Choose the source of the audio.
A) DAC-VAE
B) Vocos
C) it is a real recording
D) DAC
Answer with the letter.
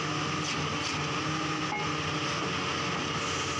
C